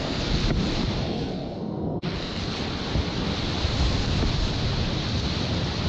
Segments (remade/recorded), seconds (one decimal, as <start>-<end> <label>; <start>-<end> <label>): 0.0-0.4 remade; 0.4-1.0 recorded; 1.0-2.4 remade; 2.4-5.9 recorded